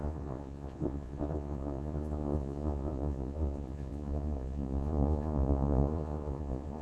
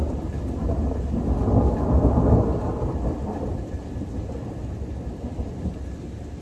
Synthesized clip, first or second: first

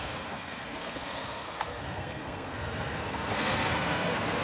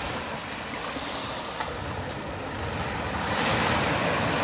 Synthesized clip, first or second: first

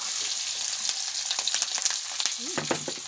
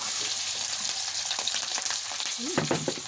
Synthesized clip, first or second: second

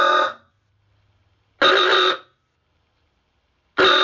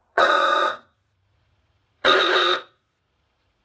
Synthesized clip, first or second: second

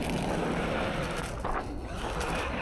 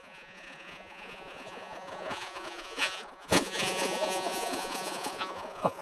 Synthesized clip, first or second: second